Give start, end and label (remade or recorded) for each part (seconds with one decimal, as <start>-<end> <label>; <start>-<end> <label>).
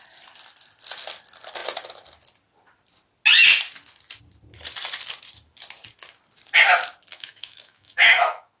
0.0-7.1 recorded; 7.1-8.6 remade